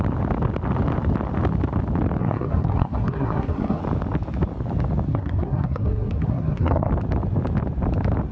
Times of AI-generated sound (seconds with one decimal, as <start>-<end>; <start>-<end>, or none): 2.2-3.8; 5.1-6.9